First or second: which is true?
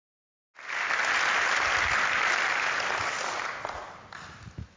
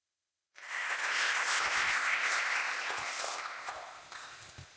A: first